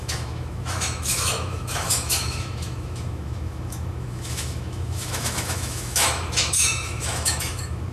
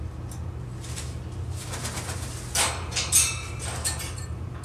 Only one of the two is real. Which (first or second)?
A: second